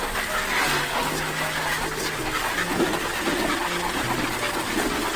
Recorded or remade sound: recorded